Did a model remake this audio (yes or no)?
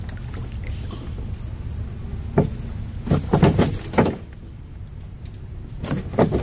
no